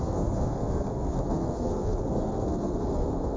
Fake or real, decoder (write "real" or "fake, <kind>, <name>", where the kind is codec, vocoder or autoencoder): fake, codec, SNAC